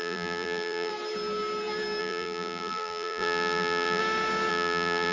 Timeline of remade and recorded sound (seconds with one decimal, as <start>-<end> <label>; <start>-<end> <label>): 0.0-0.9 remade; 0.9-2.0 recorded; 2.0-4.0 remade; 4.0-4.5 recorded; 4.5-5.1 remade